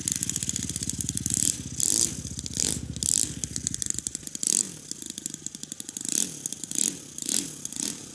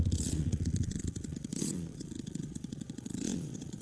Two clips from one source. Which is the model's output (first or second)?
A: second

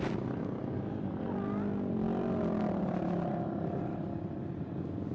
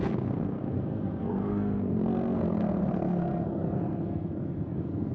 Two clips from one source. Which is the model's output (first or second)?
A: second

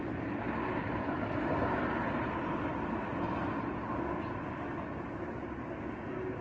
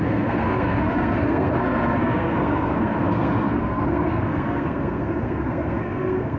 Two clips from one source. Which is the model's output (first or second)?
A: second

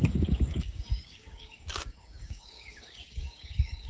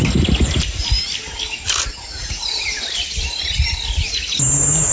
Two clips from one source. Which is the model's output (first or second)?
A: first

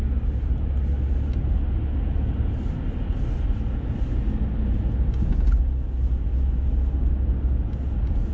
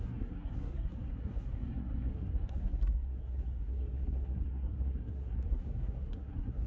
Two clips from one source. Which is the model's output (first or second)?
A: second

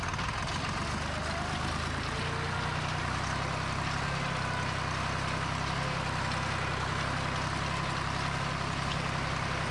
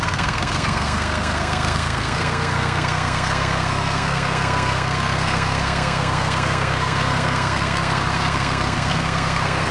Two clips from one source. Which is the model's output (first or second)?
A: second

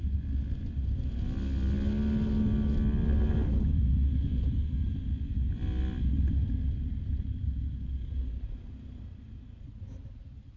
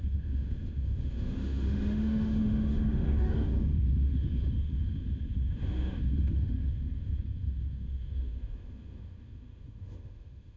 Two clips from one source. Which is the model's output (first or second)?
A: second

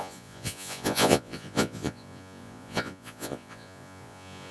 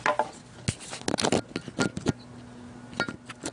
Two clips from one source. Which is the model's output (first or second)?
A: first